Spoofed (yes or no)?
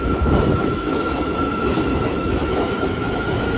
yes